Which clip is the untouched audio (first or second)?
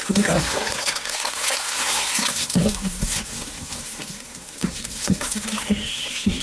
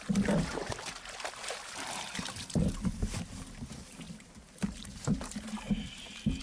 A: second